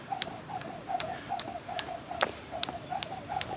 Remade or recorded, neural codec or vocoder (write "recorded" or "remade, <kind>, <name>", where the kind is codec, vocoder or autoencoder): recorded